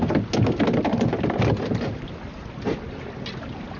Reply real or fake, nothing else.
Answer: real